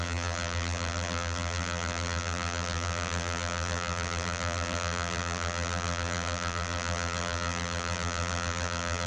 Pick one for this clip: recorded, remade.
remade